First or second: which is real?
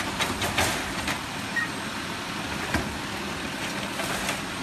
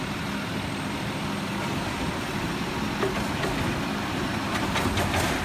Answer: first